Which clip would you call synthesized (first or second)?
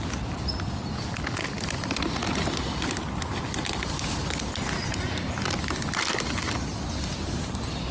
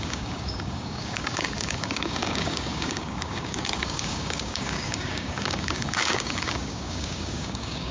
second